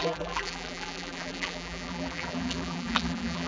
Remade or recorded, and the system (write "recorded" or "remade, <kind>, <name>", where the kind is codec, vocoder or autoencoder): remade, vocoder, BigVGAN v2